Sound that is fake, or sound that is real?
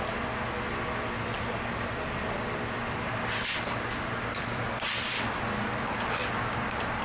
real